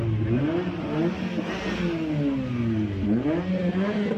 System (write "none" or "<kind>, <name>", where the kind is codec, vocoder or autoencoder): none